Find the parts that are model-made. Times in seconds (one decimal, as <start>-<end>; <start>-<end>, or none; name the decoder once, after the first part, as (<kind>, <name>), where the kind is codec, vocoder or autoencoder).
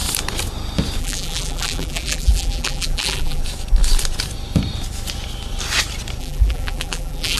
1.0-3.4 (vocoder, BigVGAN v2); 6.2-7.4